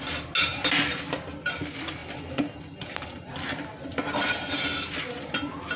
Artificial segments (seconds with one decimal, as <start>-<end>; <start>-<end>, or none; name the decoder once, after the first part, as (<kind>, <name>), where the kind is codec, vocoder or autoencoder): none